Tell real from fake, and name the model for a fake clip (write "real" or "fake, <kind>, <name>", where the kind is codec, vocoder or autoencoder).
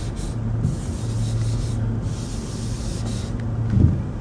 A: real